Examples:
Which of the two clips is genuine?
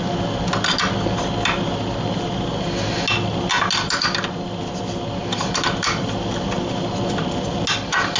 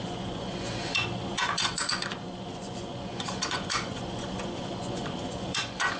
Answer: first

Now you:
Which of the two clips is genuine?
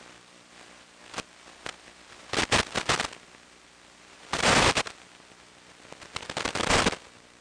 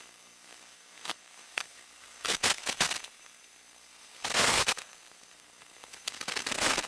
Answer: first